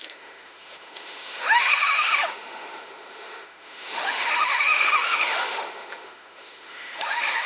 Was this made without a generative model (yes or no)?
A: no